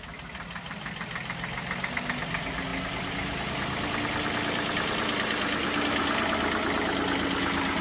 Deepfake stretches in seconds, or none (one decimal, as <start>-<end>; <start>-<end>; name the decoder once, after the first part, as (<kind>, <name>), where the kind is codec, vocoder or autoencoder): none